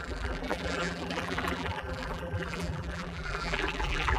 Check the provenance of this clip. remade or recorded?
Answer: remade